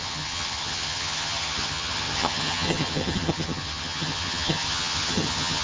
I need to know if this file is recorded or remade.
remade